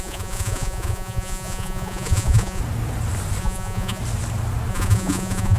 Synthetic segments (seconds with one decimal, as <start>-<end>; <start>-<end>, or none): 0.0-2.6; 3.4-4.0; 4.7-5.6